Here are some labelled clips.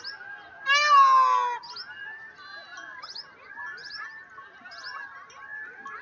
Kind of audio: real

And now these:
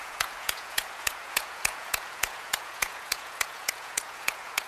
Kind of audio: fake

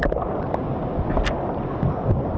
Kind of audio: real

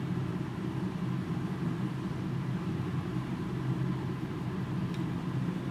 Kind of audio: real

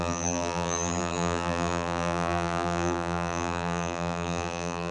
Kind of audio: fake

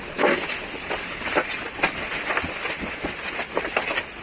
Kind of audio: real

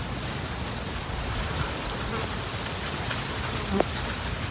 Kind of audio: real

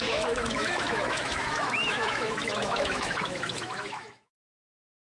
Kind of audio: fake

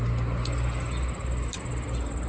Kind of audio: real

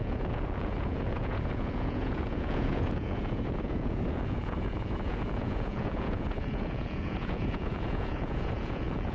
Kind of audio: fake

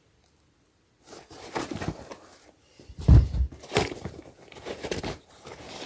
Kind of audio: real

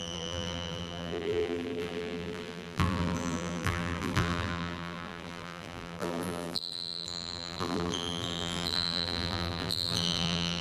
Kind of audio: fake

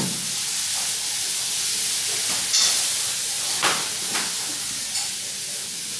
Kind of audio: real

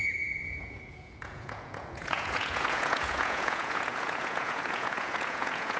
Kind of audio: fake